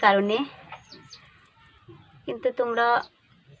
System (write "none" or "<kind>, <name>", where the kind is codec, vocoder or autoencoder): none